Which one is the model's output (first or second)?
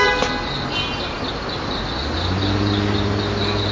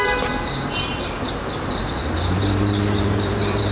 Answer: second